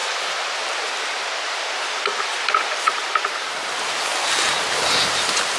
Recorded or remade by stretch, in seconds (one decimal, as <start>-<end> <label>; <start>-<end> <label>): 0.0-2.4 recorded; 2.4-4.1 remade; 4.1-4.8 recorded; 4.8-5.6 remade